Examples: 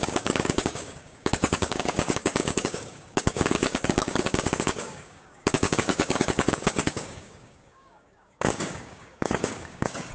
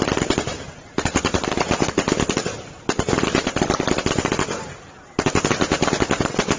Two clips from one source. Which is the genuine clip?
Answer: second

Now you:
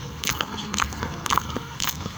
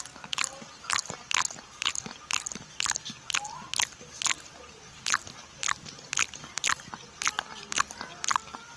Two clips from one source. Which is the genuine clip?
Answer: second